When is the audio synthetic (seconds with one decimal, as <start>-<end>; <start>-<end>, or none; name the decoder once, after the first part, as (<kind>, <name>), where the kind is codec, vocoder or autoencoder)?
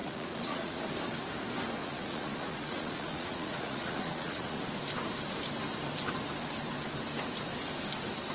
0.0-0.8 (vocoder, Vocos); 1.8-4.6